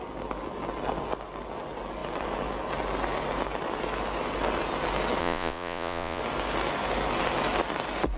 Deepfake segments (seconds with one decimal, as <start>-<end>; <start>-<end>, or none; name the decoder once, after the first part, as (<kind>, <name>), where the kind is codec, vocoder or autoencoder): 5.2-6.2 (vocoder, Vocos)